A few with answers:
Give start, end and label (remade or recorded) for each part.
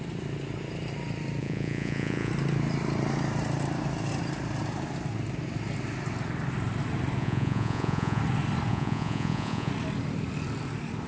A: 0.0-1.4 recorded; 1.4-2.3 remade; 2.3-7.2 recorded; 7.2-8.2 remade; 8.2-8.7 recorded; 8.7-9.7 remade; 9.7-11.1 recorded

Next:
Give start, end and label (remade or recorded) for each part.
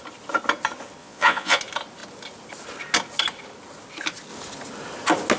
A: 0.0-1.0 recorded; 1.0-1.6 remade; 1.6-5.4 recorded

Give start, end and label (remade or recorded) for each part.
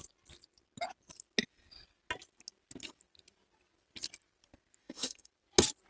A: 0.0-4.8 recorded; 4.8-5.3 remade; 5.3-5.9 recorded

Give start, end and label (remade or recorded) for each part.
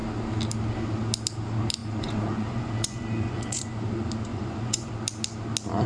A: 0.0-1.8 recorded; 1.8-3.9 remade; 3.9-4.3 recorded; 4.3-4.9 remade; 4.9-5.9 recorded